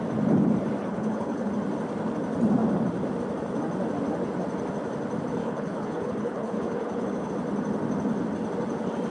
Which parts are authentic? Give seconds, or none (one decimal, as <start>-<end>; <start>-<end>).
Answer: 0.0-0.8; 1.5-5.4; 7.3-9.1